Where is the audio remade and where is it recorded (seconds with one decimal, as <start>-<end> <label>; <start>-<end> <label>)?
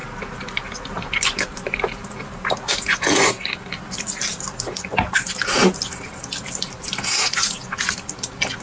0.0-3.3 remade; 3.3-8.6 recorded